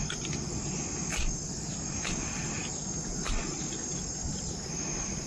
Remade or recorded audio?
remade